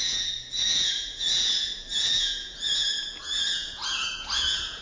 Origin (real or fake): fake